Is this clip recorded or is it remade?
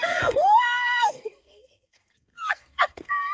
remade